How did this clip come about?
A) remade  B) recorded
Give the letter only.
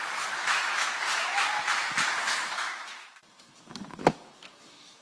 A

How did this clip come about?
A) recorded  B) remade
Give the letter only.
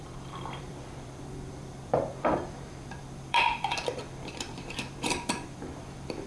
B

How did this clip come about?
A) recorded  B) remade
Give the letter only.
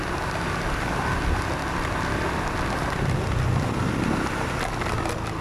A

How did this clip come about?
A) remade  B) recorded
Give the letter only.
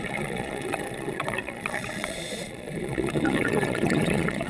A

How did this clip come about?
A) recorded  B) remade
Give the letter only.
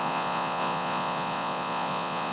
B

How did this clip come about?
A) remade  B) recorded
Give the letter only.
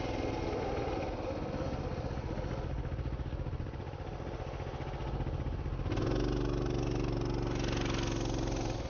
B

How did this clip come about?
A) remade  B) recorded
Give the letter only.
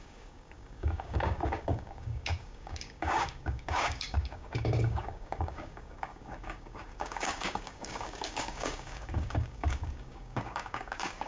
A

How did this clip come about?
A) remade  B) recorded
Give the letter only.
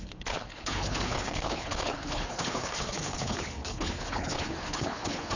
A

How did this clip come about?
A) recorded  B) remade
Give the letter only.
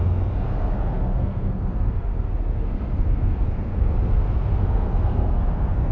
B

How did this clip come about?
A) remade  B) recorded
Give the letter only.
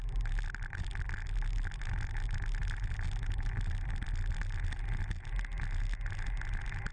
B